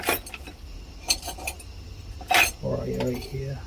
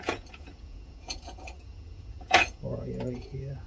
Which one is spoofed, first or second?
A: second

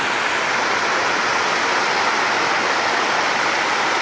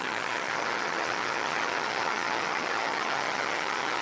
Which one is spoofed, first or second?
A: second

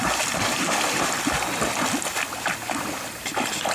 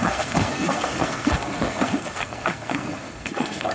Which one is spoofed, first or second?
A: second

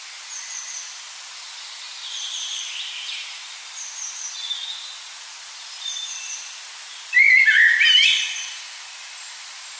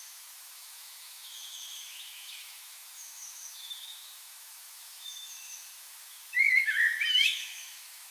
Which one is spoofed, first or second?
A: second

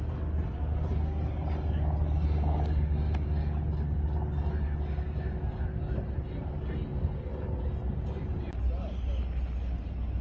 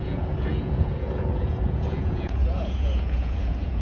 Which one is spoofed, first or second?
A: second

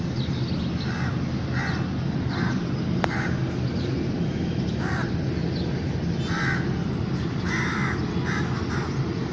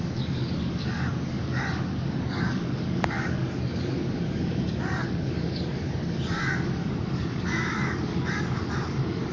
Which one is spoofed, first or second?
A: second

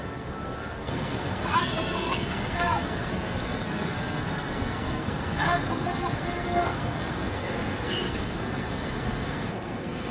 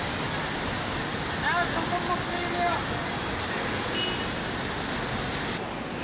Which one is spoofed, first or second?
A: first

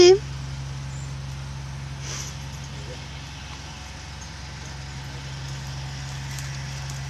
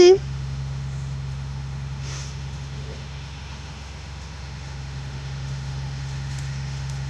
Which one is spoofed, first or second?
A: second